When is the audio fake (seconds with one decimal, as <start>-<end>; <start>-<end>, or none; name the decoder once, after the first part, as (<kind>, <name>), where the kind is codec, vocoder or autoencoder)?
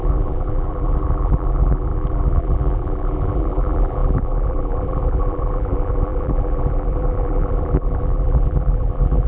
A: 0.0-9.3 (vocoder, BigVGAN v2)